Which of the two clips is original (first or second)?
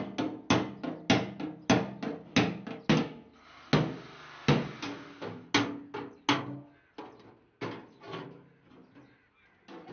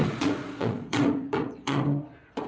first